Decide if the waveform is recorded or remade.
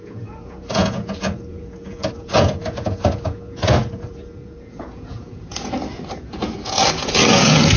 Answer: remade